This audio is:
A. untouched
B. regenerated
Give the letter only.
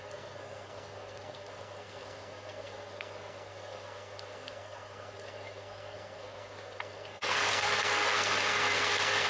B